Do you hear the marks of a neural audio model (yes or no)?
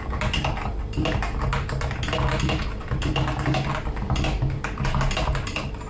no